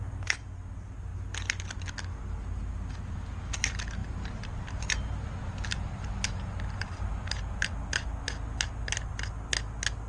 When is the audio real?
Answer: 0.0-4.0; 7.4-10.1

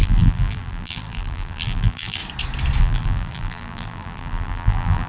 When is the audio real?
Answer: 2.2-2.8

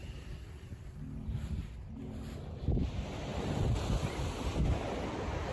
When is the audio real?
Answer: 2.9-3.3; 4.1-5.5